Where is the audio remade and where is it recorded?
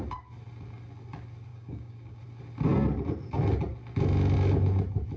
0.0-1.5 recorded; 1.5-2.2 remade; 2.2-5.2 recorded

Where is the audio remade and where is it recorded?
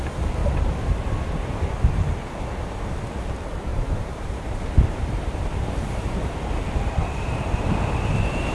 0.0-3.7 recorded; 3.7-6.5 remade; 6.5-7.0 recorded; 7.0-7.6 remade; 7.6-8.5 recorded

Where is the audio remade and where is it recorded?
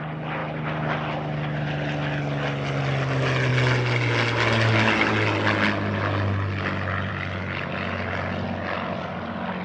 0.0-9.6 recorded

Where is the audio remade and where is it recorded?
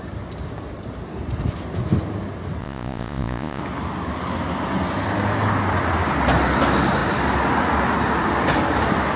0.0-2.6 recorded; 2.6-3.6 remade; 3.6-9.2 recorded